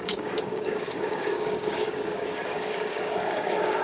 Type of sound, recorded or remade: remade